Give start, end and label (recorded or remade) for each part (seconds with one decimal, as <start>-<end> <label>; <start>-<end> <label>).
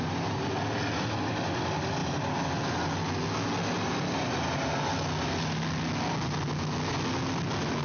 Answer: 0.0-7.8 recorded